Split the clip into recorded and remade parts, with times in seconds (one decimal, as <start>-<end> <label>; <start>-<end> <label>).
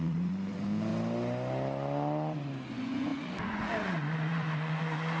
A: 0.0-0.9 remade; 0.9-2.7 recorded; 2.7-5.2 remade